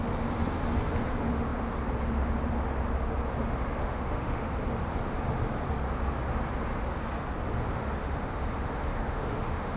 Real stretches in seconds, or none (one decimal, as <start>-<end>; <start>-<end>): 0.0-3.8; 4.5-8.0

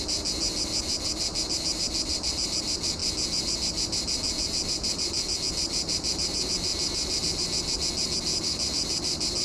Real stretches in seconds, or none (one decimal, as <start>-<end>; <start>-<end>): 0.0-9.4

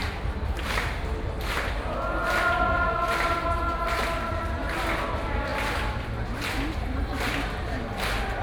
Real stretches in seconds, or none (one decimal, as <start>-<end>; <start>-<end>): 0.0-8.4